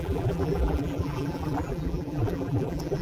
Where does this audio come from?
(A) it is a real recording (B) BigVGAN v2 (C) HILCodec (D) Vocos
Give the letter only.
B